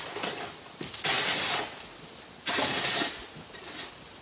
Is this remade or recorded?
recorded